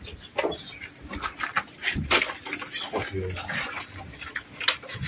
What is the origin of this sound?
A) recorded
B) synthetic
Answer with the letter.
A